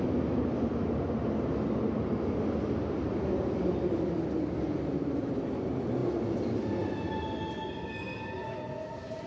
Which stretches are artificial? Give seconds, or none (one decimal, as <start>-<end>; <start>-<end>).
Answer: none